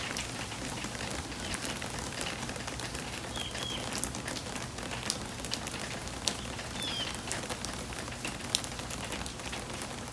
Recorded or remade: recorded